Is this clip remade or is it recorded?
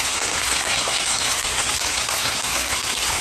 remade